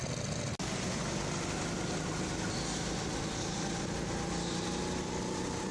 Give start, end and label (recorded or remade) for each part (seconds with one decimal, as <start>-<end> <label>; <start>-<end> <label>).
0.0-5.7 recorded